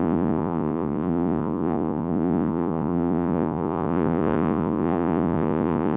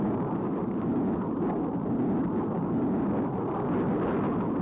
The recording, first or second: second